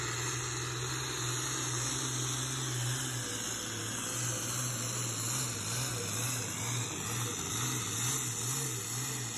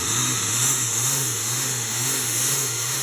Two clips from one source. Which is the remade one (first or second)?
second